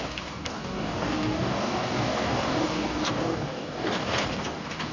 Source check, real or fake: fake